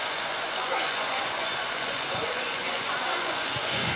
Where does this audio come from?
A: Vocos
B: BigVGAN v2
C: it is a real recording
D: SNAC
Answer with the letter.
A